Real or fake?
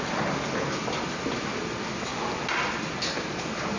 real